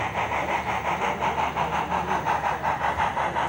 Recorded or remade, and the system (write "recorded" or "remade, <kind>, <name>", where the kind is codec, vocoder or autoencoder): recorded